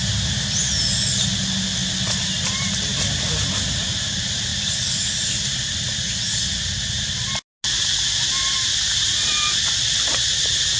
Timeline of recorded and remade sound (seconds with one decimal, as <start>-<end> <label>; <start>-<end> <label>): 0.0-10.8 recorded